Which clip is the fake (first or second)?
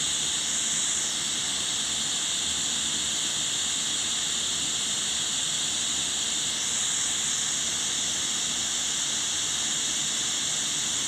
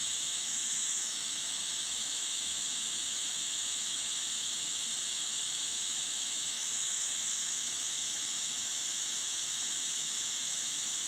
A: second